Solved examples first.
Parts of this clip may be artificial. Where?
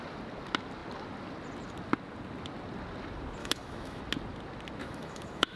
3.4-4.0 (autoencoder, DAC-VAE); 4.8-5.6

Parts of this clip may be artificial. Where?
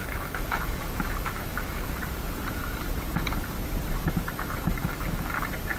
0.0-2.0 (autoencoder, DAC-VAE); 4.8-5.3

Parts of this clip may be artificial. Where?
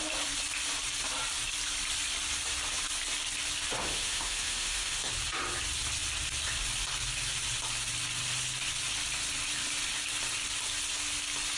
3.8-5.1 (autoencoder, DAC-VAE)